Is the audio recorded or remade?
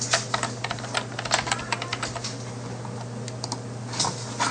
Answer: recorded